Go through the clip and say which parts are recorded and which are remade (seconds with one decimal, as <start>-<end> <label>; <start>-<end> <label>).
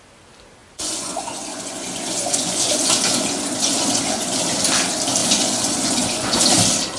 0.0-0.6 recorded; 0.6-4.4 remade; 4.4-5.2 recorded; 5.2-6.5 remade; 6.5-7.0 recorded